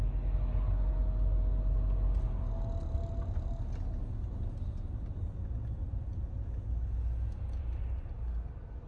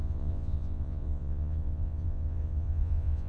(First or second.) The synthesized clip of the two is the second